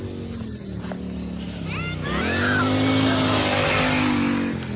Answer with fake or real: real